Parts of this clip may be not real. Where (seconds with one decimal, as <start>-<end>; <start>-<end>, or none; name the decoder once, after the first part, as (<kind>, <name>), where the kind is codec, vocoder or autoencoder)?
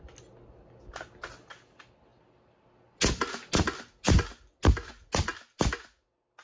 none